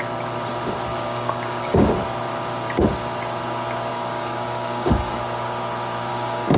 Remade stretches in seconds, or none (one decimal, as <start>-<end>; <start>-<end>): 0.9-1.9; 3.9-5.2; 6.1-6.6